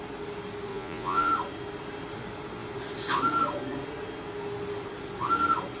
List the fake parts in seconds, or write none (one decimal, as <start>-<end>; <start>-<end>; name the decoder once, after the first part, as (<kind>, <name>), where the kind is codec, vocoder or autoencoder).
0.7-1.3 (vocoder, Vocos)